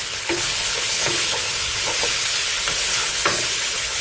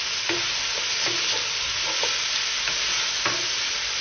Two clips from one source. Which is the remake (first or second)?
first